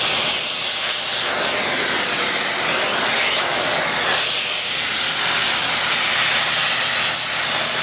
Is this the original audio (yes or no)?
yes